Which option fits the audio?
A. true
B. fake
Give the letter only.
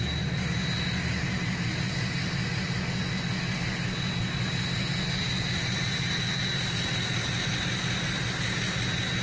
A